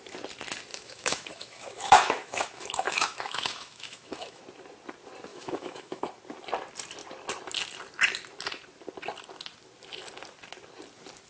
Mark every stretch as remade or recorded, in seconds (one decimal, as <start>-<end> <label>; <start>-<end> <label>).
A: 0.0-0.7 recorded; 0.7-4.4 remade; 4.4-5.3 recorded; 5.3-6.0 remade; 6.0-11.3 recorded